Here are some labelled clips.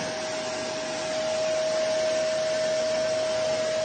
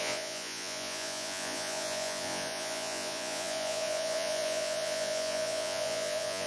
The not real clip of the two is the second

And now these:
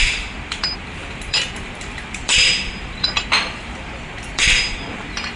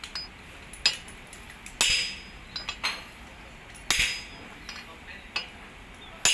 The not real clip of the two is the first